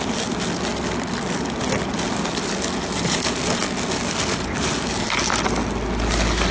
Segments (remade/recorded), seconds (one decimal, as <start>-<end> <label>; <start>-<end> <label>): 0.0-6.5 recorded